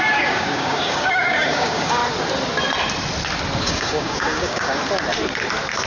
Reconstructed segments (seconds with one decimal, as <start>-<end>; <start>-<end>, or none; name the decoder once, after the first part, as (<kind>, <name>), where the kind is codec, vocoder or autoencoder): 0.0-2.0 (codec, DAC); 3.6-4.8